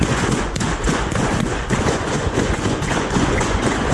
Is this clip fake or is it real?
fake